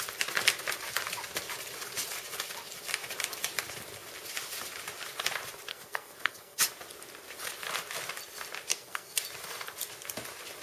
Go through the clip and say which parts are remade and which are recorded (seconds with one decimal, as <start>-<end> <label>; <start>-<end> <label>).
0.0-5.7 recorded; 5.7-6.6 remade; 6.6-8.7 recorded; 8.7-9.2 remade; 9.2-10.6 recorded